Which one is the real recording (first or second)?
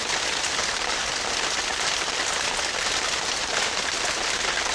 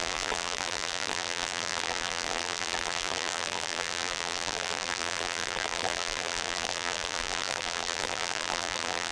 first